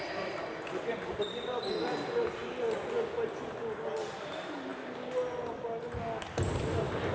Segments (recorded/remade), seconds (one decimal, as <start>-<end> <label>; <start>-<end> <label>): 0.0-2.4 remade; 2.4-4.0 recorded; 4.0-4.7 remade; 4.7-6.6 recorded; 6.6-7.1 remade